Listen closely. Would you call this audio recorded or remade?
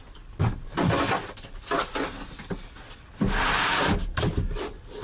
recorded